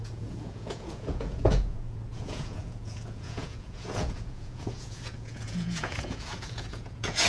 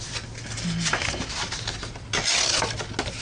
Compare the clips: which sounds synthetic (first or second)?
first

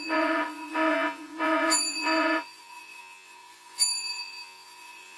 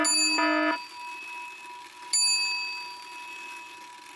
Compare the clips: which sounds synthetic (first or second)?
first